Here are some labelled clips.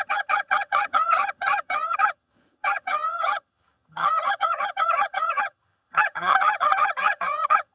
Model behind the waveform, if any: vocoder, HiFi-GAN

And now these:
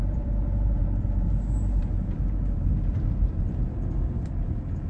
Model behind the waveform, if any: vocoder, BigVGAN v2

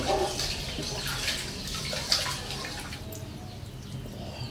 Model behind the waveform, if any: none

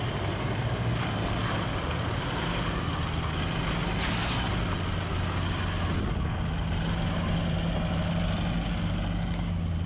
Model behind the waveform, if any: none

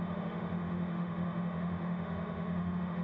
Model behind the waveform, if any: autoencoder, DAC-VAE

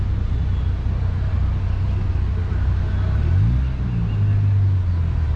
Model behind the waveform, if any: none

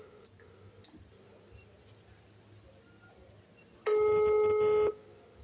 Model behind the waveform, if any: none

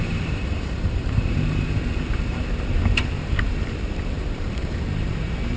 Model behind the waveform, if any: vocoder, BigVGAN v2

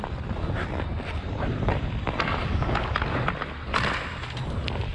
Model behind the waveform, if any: none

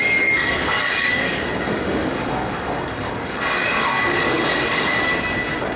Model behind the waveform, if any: codec, DAC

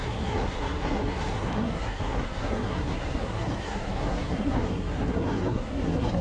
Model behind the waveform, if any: codec, SNAC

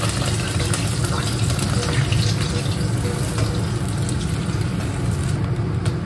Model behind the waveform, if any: none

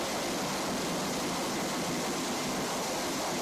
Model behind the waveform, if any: none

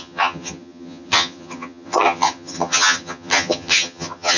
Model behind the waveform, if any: vocoder, HiFi-GAN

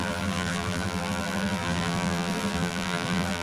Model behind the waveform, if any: vocoder, BigVGAN v2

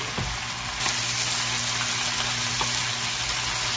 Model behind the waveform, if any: none